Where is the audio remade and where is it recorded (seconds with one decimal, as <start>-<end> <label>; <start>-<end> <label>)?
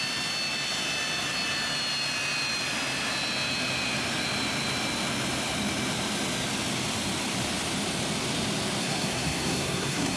0.0-8.8 recorded; 8.8-10.2 remade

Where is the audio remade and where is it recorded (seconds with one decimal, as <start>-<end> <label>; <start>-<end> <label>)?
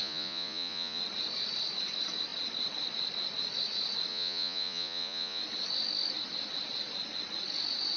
0.0-1.0 remade; 1.0-4.1 recorded; 4.1-5.4 remade; 5.4-8.0 recorded